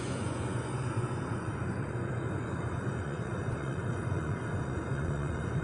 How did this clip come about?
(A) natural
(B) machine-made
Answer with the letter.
B